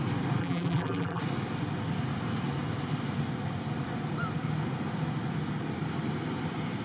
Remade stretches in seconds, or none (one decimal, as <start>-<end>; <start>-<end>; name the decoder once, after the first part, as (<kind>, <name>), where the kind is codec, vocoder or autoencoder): 0.4-1.2 (vocoder, BigVGAN v2)